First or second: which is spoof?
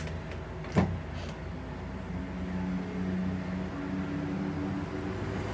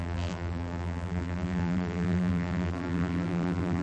second